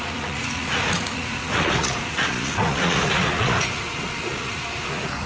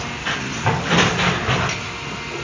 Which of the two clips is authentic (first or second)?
second